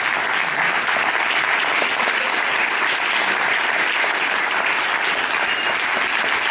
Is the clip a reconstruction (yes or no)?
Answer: no